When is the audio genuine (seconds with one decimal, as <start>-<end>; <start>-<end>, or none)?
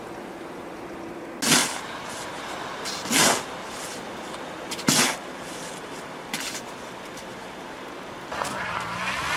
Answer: 0.0-1.6; 2.5-9.4